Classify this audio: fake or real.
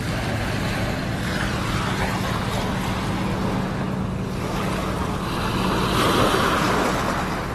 real